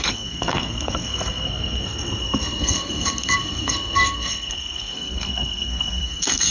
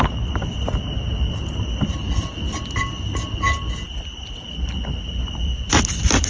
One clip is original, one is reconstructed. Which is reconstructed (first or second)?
first